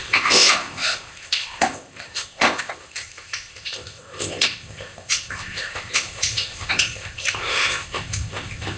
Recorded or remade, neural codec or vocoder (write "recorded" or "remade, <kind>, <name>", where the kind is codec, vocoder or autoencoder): remade, codec, ZipCodec